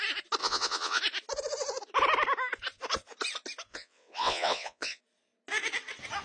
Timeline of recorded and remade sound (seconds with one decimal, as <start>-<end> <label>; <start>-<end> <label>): 0.0-0.4 recorded; 0.4-1.0 remade; 1.0-3.7 recorded; 3.7-5.0 remade; 5.0-6.2 recorded